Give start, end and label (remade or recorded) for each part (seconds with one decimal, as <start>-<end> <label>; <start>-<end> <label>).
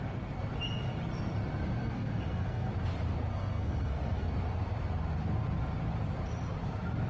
0.0-1.8 recorded; 1.8-2.7 remade; 2.7-3.3 recorded; 3.3-4.3 remade; 4.3-7.1 recorded